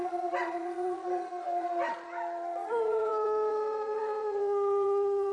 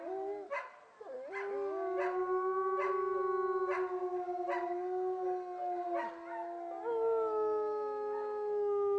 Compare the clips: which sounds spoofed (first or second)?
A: first